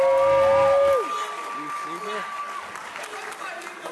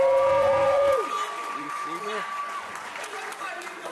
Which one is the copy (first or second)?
second